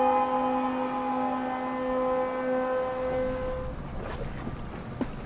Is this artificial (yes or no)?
no